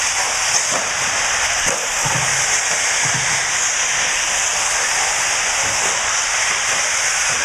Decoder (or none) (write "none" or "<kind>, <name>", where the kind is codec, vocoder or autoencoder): none